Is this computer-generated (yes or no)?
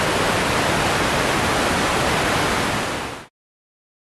no